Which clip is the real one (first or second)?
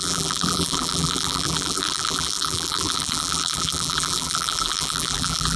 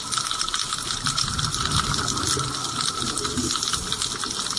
second